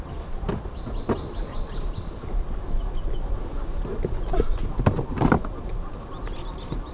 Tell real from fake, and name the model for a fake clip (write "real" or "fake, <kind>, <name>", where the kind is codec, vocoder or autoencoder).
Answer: real